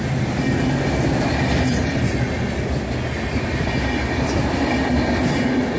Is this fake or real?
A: real